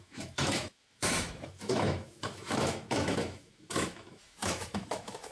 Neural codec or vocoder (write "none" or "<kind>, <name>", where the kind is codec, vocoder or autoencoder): autoencoder, DAC-VAE